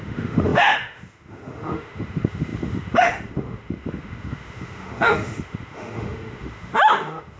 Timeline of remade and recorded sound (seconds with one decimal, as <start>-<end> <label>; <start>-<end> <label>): 0.0-7.4 remade